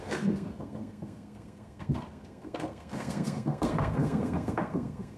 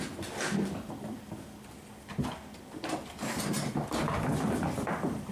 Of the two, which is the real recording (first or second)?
second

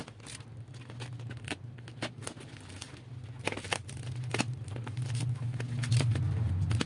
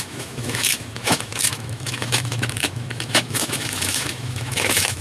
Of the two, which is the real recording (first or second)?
first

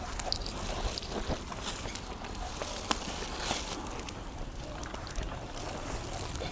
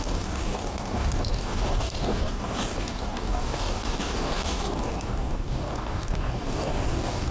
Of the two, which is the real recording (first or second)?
first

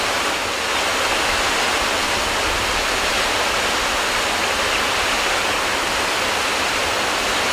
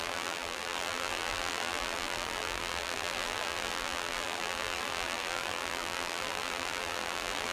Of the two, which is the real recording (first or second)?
first